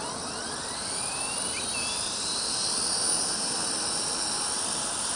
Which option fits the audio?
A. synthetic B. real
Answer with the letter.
A